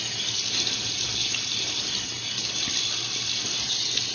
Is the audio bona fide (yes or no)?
yes